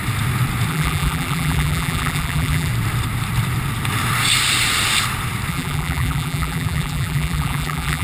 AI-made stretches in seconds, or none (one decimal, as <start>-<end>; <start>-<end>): 0.7-2.7; 5.5-8.0